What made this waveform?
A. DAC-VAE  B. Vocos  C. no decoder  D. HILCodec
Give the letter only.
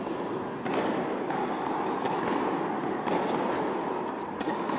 C